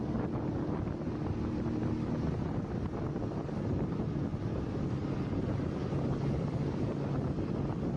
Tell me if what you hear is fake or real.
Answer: real